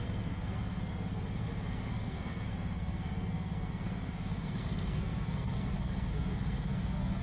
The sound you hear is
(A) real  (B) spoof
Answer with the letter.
B